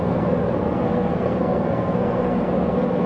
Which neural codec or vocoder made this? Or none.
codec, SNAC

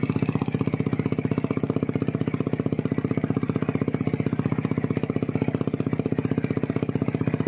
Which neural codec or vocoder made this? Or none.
none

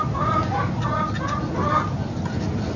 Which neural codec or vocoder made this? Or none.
none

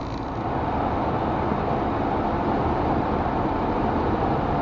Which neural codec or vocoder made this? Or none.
none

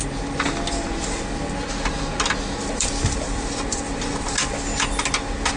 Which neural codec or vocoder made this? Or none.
none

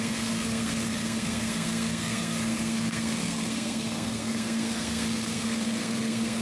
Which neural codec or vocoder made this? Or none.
codec, SNAC